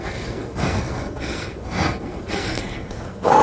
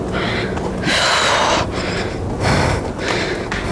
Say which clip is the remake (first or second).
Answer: first